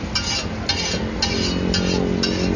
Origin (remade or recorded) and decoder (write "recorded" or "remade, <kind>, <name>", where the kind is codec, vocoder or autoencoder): recorded